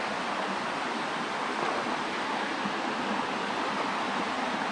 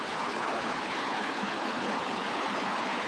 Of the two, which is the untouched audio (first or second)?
first